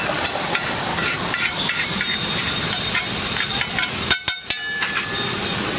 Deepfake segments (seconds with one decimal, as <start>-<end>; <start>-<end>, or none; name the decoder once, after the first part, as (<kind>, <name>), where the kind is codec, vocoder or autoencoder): 0.9-3.1 (vocoder, BigVGAN v2)